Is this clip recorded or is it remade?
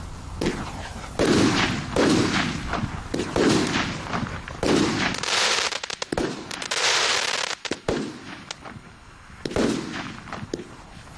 recorded